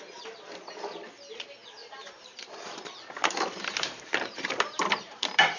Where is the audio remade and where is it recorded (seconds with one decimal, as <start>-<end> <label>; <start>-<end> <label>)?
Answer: 0.0-1.8 recorded; 1.8-5.6 remade